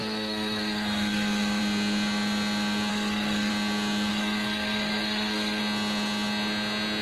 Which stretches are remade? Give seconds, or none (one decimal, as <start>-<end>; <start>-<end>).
0.0-1.6; 2.9-3.5; 4.1-5.6